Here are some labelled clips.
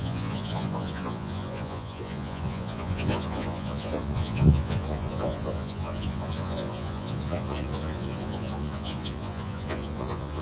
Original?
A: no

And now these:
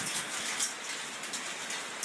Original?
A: yes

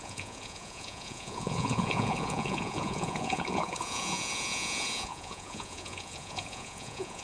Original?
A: no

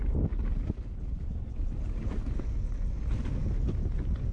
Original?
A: yes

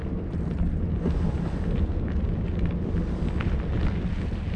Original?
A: yes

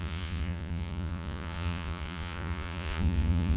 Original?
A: no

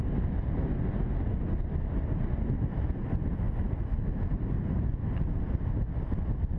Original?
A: yes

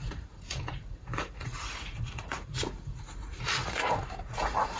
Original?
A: no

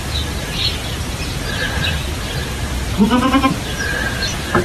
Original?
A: yes